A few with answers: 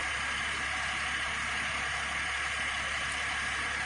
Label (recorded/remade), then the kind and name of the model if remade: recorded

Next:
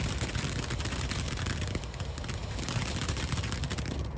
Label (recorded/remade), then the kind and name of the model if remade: recorded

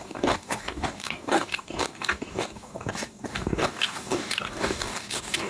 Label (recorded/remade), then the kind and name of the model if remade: remade, codec, DAC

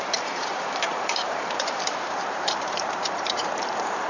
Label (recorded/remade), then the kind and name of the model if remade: remade, vocoder, BigVGAN v2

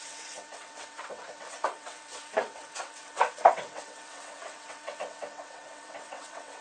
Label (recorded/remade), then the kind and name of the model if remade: remade, vocoder, WaveNeXt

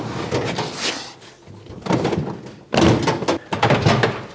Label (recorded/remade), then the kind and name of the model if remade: recorded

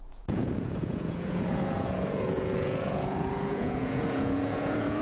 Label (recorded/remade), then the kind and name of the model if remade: remade, vocoder, Vocos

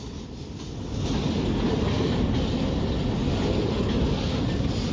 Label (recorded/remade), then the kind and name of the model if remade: recorded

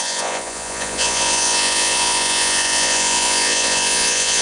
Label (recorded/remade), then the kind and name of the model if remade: remade, vocoder, Vocos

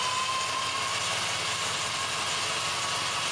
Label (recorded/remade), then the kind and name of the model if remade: recorded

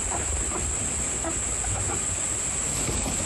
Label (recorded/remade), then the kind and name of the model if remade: recorded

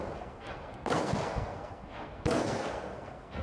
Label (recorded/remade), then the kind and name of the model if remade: remade, codec, SNAC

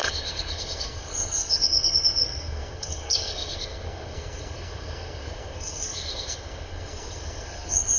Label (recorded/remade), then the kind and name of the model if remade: remade, codec, SNAC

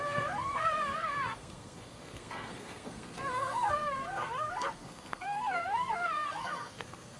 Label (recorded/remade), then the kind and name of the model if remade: remade, codec, SNAC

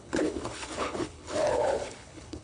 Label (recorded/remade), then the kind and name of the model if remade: remade, codec, HILCodec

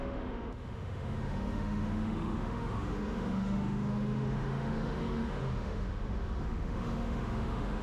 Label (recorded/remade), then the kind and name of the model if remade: remade, autoencoder, DAC-VAE